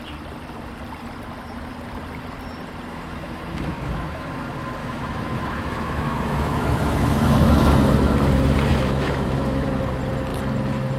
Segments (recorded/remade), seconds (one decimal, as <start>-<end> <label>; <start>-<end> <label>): 0.0-2.9 recorded; 2.9-4.3 remade; 4.3-4.8 recorded; 4.8-7.7 remade; 7.7-8.7 recorded; 8.7-9.7 remade; 9.7-11.0 recorded